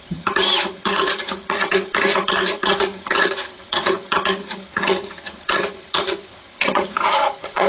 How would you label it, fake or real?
fake